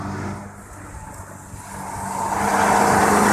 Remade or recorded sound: recorded